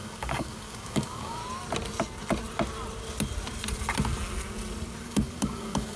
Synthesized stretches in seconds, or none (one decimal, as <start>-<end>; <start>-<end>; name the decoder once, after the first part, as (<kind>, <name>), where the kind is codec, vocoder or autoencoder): 0.0-1.4 (codec, DAC); 5.0-6.0